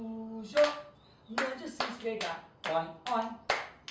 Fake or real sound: real